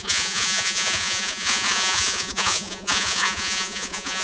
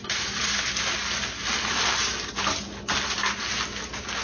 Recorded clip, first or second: second